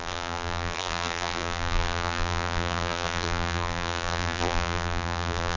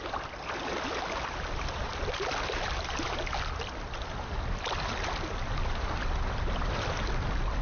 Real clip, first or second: second